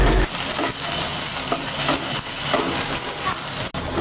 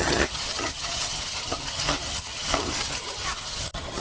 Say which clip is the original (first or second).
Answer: first